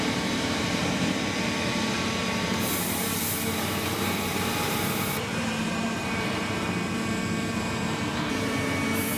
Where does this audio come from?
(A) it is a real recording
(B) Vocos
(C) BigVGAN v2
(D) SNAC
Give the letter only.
C